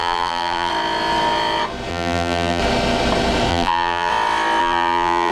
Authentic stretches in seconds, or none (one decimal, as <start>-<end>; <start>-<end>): 0.7-1.9; 2.6-3.5; 4.1-4.6